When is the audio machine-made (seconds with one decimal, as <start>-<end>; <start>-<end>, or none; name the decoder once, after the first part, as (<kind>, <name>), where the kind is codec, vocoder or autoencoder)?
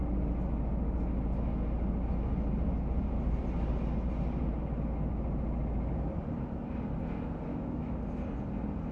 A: 7.5-8.0 (autoencoder, DAC-VAE)